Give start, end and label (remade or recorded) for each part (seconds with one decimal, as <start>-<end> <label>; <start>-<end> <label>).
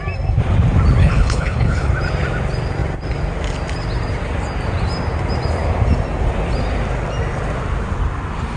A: 0.0-1.0 recorded; 1.0-1.9 remade; 1.9-8.6 recorded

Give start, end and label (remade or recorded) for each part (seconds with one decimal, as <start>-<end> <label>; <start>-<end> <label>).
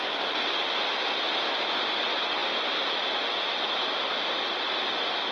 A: 0.0-5.3 recorded